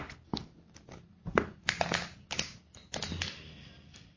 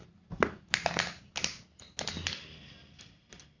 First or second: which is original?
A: second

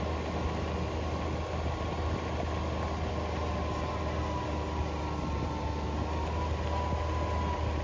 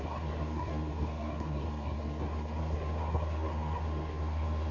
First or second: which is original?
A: first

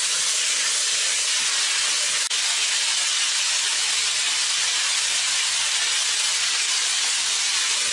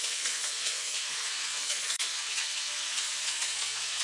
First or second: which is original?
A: first